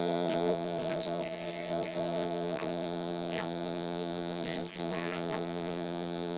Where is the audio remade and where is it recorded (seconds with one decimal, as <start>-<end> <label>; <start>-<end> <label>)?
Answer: 0.0-6.4 remade